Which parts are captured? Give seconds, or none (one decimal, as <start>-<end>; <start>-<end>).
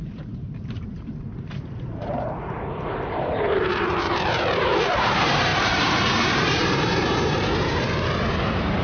none